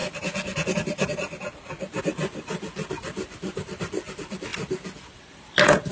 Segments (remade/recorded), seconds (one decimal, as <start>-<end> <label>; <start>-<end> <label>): 0.0-2.0 recorded; 2.0-4.5 remade; 4.5-5.1 recorded; 5.1-5.9 remade